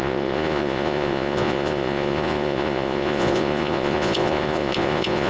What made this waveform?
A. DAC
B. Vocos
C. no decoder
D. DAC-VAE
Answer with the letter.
B